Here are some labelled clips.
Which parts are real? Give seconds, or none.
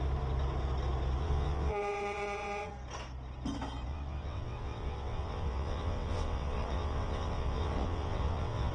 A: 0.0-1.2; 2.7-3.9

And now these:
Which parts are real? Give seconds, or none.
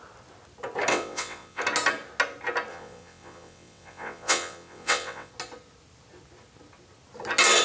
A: 0.0-0.9; 1.6-2.7; 5.3-7.6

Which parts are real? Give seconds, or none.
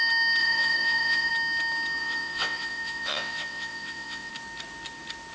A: 0.0-0.4; 1.3-2.0; 4.3-5.3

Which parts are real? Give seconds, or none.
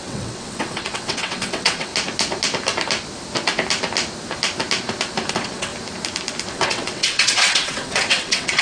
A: 1.9-5.3; 5.7-6.5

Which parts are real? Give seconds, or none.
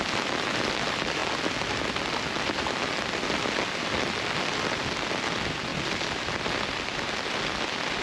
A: 0.0-8.0